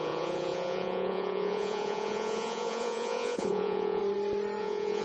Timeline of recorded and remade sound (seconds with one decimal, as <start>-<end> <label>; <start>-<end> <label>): 0.0-4.0 remade; 4.0-4.6 recorded; 4.6-5.0 remade